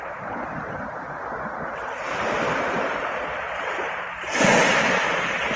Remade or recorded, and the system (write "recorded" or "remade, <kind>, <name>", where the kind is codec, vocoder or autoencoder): remade, vocoder, BigVGAN v2